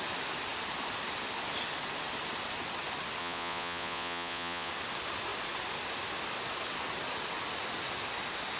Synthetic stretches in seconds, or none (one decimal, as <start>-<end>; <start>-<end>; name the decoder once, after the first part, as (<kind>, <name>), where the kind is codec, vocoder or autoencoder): 3.2-4.7 (vocoder, Vocos)